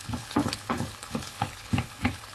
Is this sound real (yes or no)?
no